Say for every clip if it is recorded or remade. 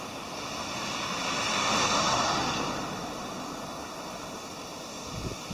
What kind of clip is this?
recorded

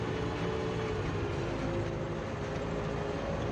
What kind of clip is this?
recorded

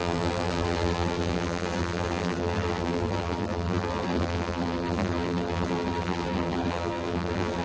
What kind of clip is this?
remade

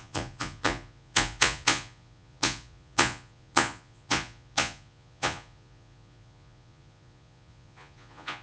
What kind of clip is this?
remade